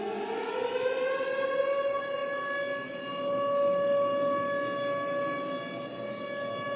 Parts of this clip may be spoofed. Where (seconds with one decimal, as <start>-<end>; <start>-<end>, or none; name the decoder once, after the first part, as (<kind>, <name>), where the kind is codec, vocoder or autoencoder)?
none